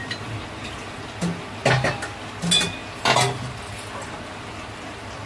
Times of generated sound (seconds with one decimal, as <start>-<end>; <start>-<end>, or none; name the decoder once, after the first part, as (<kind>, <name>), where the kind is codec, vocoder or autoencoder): none